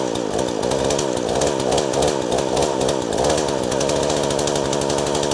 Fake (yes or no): no